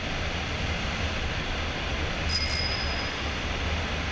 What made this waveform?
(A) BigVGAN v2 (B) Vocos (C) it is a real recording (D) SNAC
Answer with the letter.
C